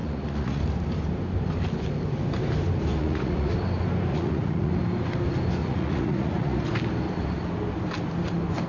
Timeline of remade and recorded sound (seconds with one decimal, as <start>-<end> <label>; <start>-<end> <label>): 0.0-0.6 remade; 0.6-3.0 recorded; 3.0-3.5 remade; 3.5-4.1 recorded; 4.1-4.7 remade; 4.7-5.6 recorded; 5.6-6.6 remade; 6.6-8.7 recorded